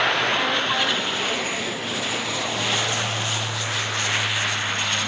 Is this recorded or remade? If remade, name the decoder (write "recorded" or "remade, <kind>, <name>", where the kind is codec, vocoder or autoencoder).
recorded